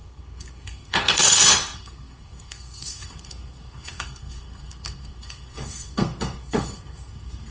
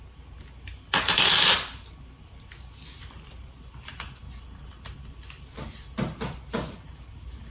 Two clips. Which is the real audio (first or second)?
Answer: second